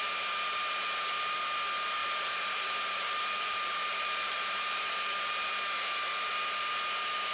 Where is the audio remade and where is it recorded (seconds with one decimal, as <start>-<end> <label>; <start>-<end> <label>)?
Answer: 0.0-2.0 recorded; 2.0-5.5 remade; 5.5-7.3 recorded